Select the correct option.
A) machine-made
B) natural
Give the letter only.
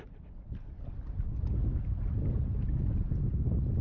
B